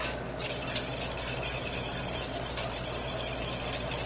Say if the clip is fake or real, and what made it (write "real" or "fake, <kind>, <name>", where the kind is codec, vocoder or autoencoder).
real